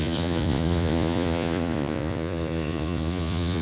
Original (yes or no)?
no